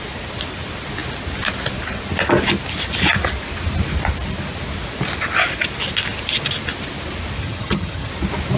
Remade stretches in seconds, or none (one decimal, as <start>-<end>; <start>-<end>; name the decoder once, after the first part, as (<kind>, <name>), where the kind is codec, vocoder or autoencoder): 7.4-8.1 (vocoder, HiFi-GAN)